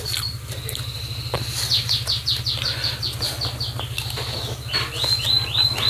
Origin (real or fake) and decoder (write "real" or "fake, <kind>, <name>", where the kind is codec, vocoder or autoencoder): real